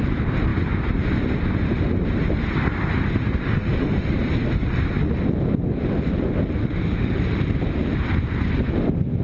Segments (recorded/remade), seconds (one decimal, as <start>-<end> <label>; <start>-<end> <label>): 0.0-3.4 recorded; 3.4-4.2 remade; 4.2-6.6 recorded; 6.6-7.2 remade; 7.2-9.2 recorded

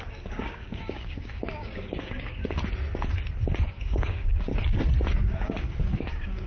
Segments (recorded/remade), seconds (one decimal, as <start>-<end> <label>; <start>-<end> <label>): 0.0-2.4 remade; 2.4-3.7 recorded; 3.7-4.5 remade; 4.5-5.2 recorded; 5.2-6.5 remade

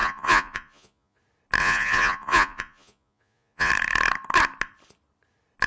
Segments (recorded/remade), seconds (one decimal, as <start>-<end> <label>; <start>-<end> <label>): 0.0-1.2 remade; 1.2-1.6 recorded; 1.6-3.7 remade; 3.7-5.7 recorded